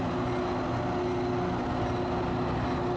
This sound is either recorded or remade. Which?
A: recorded